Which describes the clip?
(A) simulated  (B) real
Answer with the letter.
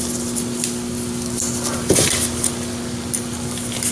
B